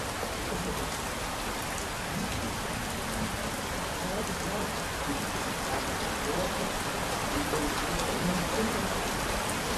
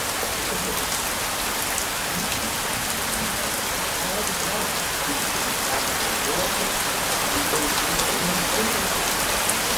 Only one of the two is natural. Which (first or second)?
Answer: second